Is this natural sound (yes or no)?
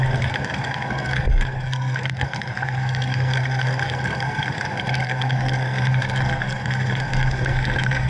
no